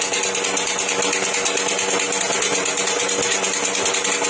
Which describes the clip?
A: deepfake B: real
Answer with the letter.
B